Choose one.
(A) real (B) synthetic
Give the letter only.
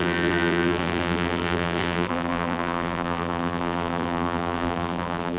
B